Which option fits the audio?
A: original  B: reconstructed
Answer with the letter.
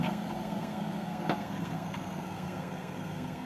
B